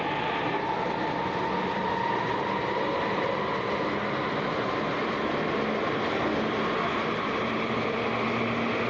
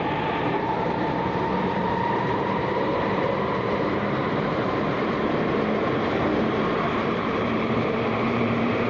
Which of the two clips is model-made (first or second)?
second